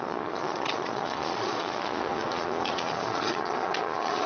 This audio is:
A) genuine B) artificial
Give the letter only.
B